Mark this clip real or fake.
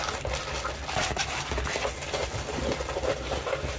real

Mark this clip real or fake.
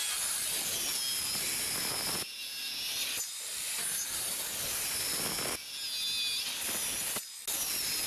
real